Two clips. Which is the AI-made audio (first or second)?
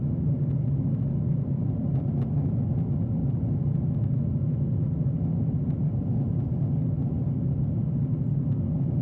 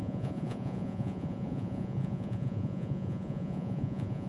second